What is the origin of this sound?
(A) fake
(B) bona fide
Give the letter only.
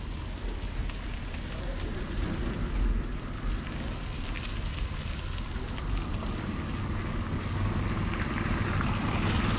B